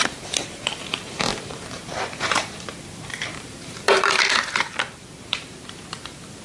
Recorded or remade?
remade